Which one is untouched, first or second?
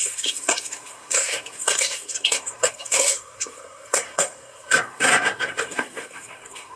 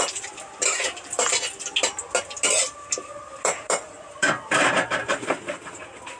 second